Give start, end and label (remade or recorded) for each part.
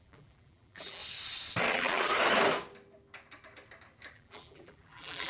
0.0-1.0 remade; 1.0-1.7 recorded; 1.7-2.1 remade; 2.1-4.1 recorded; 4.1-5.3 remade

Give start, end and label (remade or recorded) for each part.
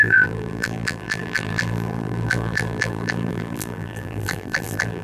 0.0-5.0 remade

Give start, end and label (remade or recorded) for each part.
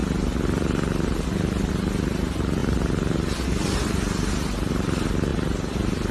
0.0-6.1 recorded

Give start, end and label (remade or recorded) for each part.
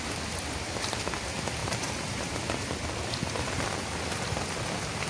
0.0-1.6 recorded; 1.6-2.7 remade; 2.7-5.1 recorded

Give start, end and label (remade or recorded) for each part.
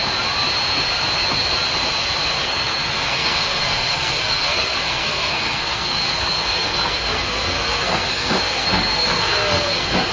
0.0-2.4 recorded; 2.4-10.1 remade